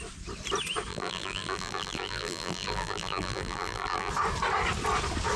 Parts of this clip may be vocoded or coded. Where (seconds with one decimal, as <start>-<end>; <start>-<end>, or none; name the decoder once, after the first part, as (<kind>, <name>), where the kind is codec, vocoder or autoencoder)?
0.9-4.1 (vocoder, BigVGAN v2)